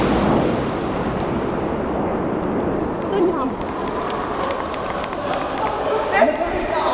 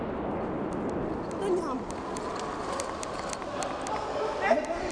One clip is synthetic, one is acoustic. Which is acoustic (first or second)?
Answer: second